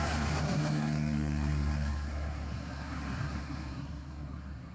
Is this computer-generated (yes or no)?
yes